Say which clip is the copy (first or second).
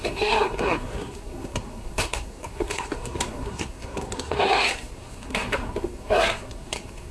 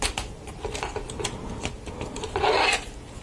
first